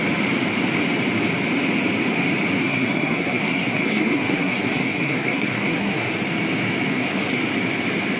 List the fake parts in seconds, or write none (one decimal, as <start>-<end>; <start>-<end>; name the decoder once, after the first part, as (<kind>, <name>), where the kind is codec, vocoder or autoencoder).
2.6-6.1 (codec, SNAC); 6.9-7.4